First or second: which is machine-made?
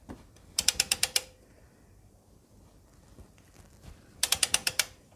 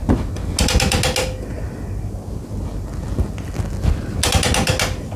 first